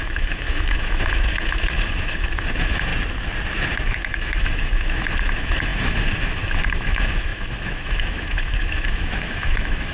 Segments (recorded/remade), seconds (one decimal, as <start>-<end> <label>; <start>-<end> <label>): 0.0-2.9 remade; 2.9-3.8 recorded; 3.8-9.9 remade